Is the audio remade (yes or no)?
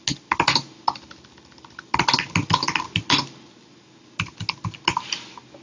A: no